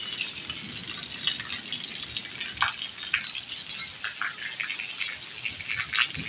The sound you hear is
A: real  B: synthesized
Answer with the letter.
A